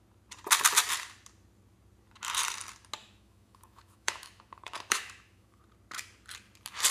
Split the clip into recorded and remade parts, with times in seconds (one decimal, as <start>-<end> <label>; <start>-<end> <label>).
0.0-3.0 recorded; 3.0-5.6 remade; 5.6-6.9 recorded